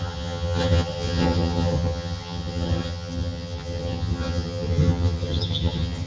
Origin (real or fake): fake